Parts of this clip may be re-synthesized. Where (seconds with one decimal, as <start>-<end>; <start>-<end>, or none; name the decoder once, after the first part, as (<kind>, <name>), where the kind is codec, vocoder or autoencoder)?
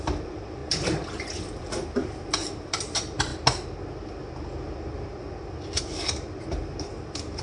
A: 0.0-0.6 (vocoder, BigVGAN v2); 1.5-3.3; 5.8-7.4